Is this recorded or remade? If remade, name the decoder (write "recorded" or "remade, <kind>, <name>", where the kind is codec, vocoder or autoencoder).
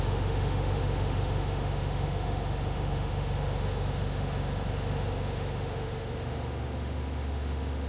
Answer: remade, autoencoder, DAC-VAE